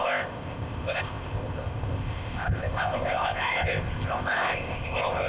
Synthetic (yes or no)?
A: yes